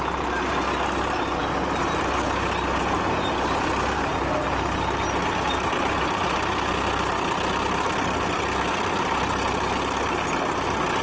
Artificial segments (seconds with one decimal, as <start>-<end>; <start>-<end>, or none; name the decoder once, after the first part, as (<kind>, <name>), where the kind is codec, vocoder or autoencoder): none